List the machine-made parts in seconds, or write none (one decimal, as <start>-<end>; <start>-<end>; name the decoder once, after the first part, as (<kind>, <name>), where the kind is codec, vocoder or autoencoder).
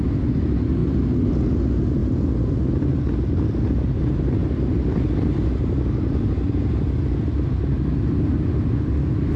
none